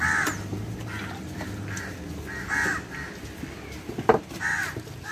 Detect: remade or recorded recorded